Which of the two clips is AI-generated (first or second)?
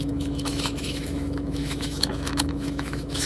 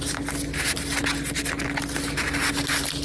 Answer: first